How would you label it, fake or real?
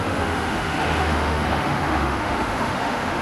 fake